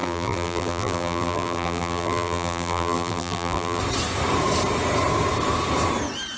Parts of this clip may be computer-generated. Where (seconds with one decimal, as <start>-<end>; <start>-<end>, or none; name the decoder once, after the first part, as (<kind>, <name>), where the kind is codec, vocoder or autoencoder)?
0.0-3.8 (vocoder, BigVGAN v2)